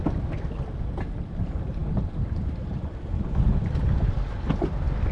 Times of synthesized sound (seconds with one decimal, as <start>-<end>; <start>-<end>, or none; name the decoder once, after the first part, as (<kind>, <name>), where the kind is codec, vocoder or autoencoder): none